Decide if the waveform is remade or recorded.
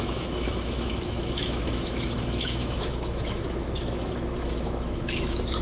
remade